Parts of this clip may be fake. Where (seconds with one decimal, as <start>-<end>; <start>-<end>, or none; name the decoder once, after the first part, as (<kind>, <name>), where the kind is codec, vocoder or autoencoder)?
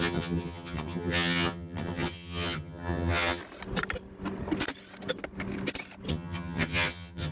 0.0-3.4 (vocoder, HiFi-GAN); 6.1-7.3